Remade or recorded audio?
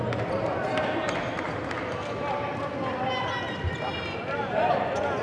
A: recorded